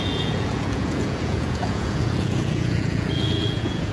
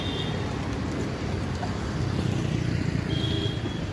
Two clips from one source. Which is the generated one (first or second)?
first